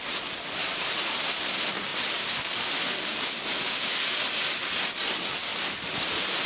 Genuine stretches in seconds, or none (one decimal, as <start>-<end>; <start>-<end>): 0.0-0.6; 1.3-1.9; 2.7-6.5